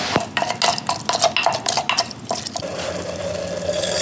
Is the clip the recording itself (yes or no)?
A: yes